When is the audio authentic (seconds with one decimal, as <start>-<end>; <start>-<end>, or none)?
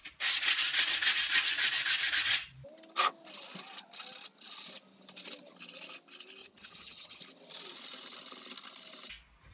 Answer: 0.0-6.4; 7.2-9.5